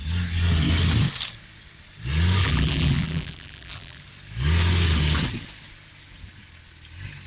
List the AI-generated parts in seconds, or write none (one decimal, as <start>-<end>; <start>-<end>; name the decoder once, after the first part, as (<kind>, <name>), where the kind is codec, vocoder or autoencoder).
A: 2.4-4.0 (vocoder, BigVGAN v2)